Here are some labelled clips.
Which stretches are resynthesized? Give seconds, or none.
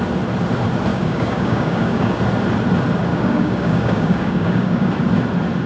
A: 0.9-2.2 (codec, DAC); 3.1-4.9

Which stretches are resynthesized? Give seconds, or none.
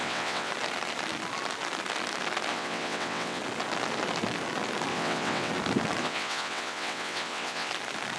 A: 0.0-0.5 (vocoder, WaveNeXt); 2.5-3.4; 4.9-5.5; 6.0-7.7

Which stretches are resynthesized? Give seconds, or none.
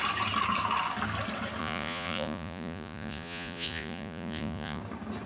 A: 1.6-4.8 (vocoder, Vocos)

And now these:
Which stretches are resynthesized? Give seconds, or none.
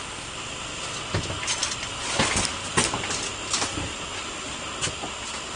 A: none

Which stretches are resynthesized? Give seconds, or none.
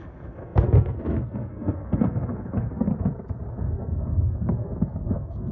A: 0.0-2.9 (codec, SNAC); 3.5-5.5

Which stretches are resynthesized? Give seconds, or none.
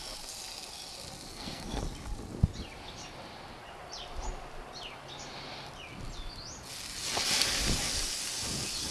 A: 1.3-1.8 (codec, SNAC)